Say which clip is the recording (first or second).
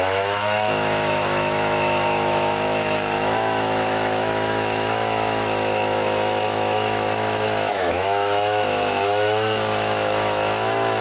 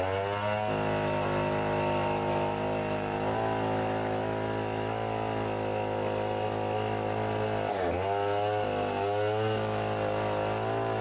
second